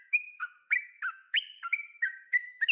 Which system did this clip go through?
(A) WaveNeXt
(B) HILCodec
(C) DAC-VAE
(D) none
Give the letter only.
C